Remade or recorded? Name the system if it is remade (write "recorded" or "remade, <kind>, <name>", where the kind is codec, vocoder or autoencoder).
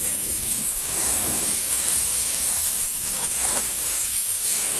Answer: remade, codec, DAC